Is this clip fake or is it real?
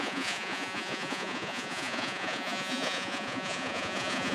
fake